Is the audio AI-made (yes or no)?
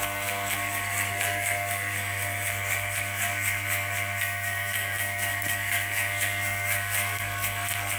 yes